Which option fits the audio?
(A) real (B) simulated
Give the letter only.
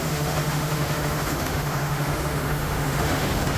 B